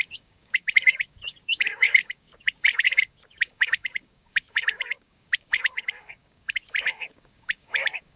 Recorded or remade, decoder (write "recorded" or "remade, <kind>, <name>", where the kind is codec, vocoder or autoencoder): remade, codec, DAC